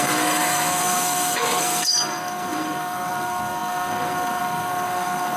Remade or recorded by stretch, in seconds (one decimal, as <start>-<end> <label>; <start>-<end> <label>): 0.0-5.4 remade